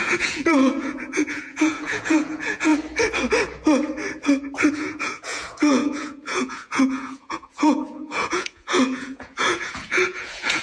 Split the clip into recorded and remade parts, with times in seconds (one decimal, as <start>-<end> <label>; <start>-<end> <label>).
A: 0.0-2.7 remade; 2.7-4.7 recorded; 4.7-10.6 remade